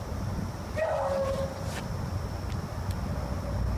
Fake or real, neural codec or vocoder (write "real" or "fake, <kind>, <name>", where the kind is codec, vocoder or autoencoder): real